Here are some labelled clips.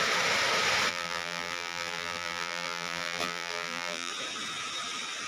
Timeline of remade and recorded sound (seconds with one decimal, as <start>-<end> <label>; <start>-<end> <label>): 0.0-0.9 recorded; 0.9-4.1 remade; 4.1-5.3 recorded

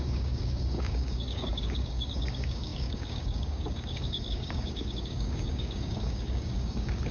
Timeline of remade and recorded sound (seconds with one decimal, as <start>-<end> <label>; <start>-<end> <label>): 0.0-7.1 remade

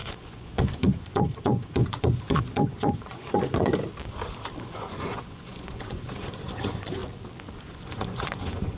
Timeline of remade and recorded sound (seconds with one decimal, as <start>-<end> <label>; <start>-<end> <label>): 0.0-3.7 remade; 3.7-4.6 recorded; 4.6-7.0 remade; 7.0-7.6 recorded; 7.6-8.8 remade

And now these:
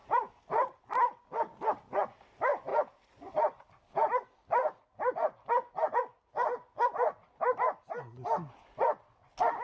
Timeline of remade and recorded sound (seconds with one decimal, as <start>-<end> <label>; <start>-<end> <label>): 0.0-9.6 recorded

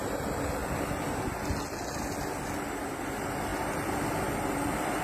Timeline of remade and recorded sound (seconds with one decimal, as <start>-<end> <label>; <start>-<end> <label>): 0.0-5.0 recorded

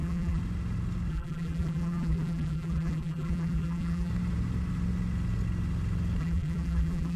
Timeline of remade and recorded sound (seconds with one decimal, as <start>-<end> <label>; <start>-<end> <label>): 0.0-0.4 remade; 0.4-1.1 recorded; 1.1-4.1 remade; 4.1-6.2 recorded; 6.2-7.2 remade